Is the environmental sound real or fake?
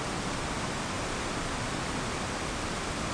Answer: real